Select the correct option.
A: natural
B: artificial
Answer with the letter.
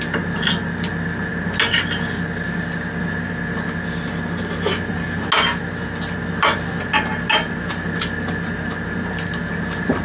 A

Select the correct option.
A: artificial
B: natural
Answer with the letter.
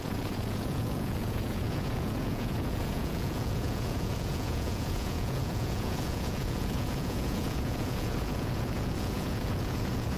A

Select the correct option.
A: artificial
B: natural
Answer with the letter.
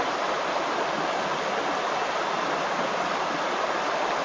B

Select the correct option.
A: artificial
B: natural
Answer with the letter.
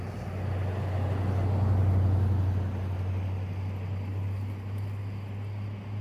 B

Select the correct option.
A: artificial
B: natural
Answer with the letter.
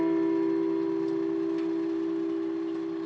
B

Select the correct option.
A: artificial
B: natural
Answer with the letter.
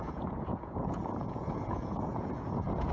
A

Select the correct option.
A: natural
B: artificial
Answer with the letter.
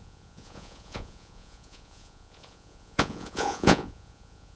B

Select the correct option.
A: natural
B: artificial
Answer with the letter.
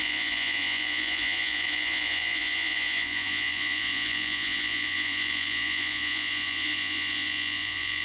B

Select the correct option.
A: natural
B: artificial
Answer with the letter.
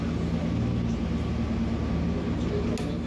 A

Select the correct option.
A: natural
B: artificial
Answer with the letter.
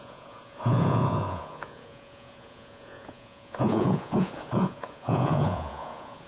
B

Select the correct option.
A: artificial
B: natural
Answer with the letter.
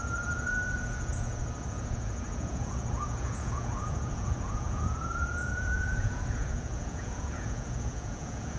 A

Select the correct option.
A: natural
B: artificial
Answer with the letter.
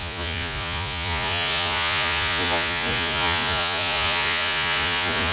B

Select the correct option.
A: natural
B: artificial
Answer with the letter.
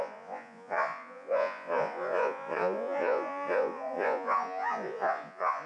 B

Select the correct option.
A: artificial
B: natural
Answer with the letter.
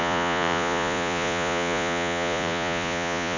A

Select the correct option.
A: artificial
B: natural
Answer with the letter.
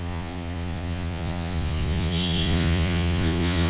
A